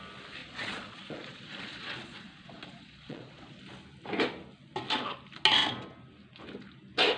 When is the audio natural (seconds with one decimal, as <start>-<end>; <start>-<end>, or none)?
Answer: 0.0-0.4; 3.6-7.2